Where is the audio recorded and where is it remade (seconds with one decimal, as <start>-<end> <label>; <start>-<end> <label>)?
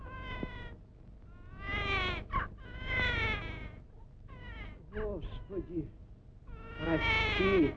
0.0-7.8 recorded